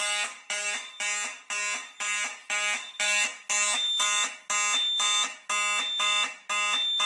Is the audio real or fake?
real